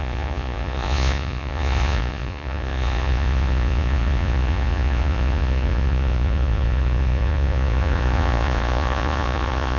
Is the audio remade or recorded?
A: remade